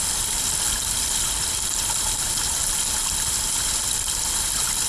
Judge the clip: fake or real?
real